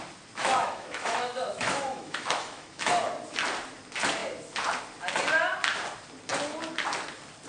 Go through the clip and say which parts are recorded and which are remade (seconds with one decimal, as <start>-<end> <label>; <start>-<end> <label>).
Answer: 0.0-0.4 recorded; 0.4-2.9 remade; 2.9-7.5 recorded